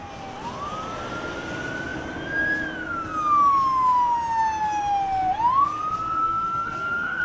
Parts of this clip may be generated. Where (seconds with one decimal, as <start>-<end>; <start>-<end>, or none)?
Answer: 6.2-7.2